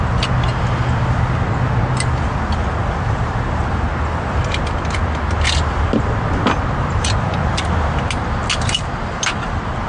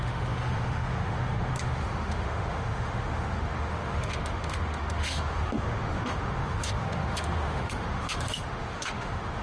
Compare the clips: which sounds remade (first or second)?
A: second